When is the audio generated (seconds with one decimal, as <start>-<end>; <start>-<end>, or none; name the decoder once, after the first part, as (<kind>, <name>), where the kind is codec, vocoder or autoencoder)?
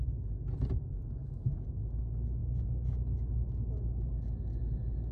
1.2-2.0 (autoencoder, DAC-VAE); 2.4-4.6